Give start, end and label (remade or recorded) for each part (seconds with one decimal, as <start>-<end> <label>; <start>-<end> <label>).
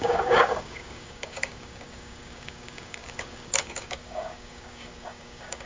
0.0-5.7 remade